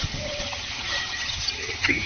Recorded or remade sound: remade